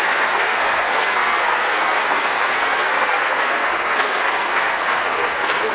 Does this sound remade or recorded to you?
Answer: remade